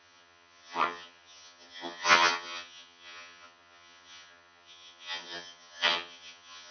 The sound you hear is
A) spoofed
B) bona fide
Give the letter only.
A